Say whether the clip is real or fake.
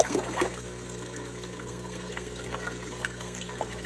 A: fake